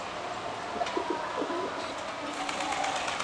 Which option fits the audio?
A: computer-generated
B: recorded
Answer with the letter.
B